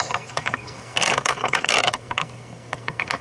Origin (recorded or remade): remade